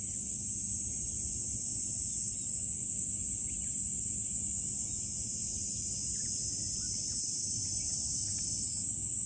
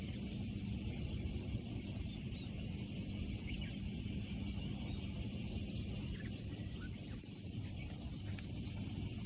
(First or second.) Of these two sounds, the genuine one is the first